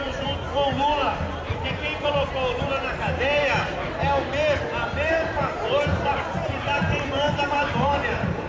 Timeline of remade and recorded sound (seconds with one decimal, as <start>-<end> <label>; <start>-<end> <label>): 0.0-1.0 remade; 1.0-5.7 recorded; 5.7-8.5 remade